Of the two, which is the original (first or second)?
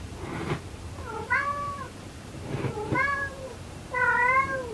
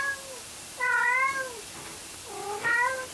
second